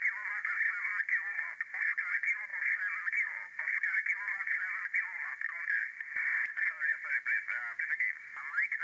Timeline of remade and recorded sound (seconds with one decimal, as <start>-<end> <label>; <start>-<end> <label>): 0.0-4.3 recorded; 4.3-5.0 remade; 5.0-6.2 recorded; 6.2-7.1 remade; 7.1-8.8 recorded